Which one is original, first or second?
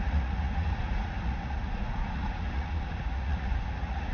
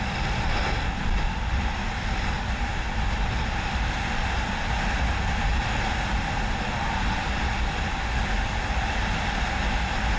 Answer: second